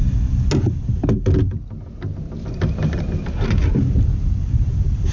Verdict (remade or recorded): recorded